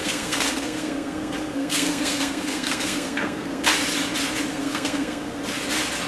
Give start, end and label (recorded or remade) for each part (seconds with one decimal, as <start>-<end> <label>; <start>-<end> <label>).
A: 0.0-3.7 remade; 3.7-4.5 recorded; 4.5-5.4 remade; 5.4-6.1 recorded